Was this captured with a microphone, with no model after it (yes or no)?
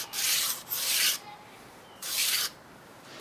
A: no